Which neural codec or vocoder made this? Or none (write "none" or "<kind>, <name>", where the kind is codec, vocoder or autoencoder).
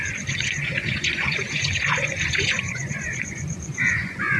vocoder, Vocos